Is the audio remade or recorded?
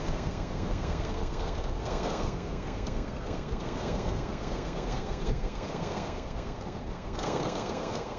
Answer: remade